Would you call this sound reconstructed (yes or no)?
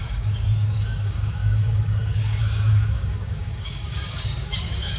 yes